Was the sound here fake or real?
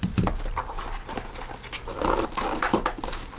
real